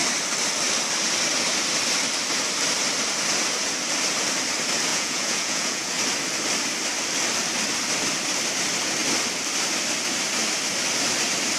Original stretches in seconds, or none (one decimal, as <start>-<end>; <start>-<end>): 0.0-4.9; 5.9-11.6